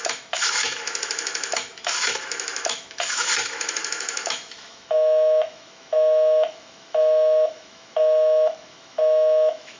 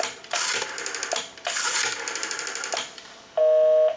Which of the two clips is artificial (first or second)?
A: first